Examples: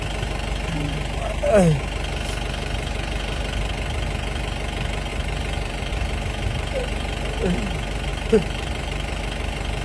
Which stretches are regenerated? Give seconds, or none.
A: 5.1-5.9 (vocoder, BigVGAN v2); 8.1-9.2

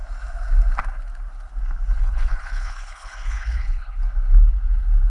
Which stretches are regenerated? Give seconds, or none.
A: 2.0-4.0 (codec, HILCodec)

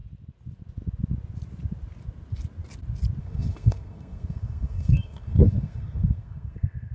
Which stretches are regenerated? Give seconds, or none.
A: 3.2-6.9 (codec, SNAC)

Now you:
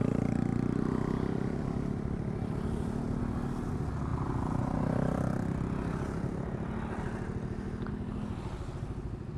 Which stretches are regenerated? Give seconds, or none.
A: none

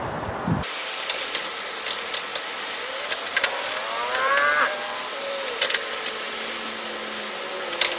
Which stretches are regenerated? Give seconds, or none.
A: none

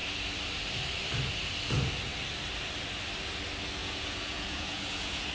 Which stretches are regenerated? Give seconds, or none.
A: 3.8-5.3 (vocoder, Vocos)

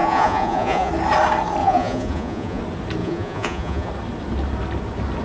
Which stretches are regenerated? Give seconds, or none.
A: 0.0-0.9 (vocoder, Vocos); 1.6-2.6; 3.0-3.9